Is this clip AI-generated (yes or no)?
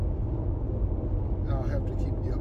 no